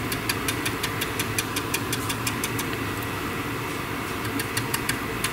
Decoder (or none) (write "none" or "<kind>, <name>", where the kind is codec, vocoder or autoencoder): none